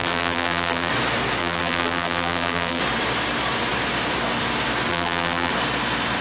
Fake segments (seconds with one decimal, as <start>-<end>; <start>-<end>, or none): 0.0-0.9; 1.4-2.8; 4.9-5.5